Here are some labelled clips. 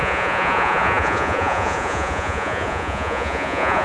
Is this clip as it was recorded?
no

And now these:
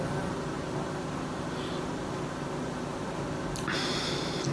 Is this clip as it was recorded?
yes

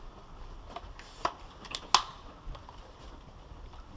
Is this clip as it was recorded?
yes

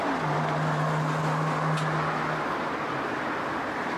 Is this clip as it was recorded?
yes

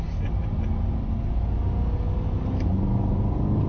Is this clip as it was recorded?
yes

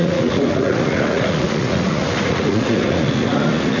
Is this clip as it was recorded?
no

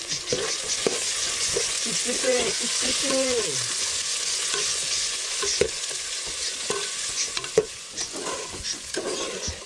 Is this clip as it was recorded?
no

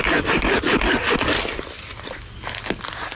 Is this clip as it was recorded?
yes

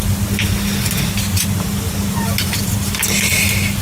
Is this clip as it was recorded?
yes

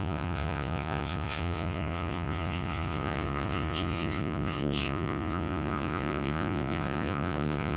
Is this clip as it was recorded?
no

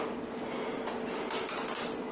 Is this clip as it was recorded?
yes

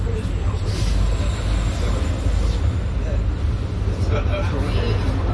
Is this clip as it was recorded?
yes